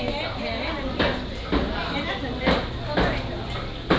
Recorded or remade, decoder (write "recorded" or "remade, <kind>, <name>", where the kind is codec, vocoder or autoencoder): recorded